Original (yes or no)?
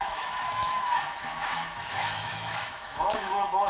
no